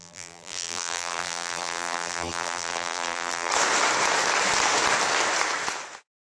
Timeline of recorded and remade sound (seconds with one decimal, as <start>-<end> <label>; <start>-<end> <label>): 0.0-3.5 remade; 3.5-6.3 recorded